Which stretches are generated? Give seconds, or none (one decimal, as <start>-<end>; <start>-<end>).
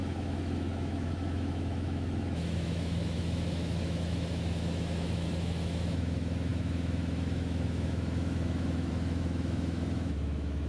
0.0-10.7